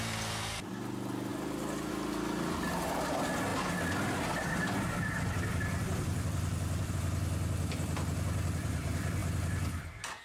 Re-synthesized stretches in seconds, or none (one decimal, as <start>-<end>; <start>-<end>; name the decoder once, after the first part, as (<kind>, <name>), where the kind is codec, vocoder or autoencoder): none